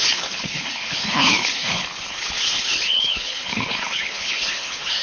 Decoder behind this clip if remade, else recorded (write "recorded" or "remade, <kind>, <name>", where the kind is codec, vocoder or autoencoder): remade, codec, HILCodec